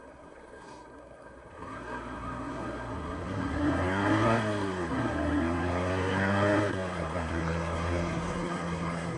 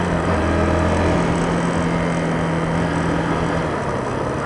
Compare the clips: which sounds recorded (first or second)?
second